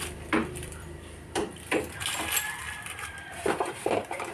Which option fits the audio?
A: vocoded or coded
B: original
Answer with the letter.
A